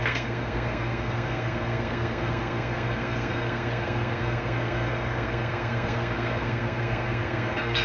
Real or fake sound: fake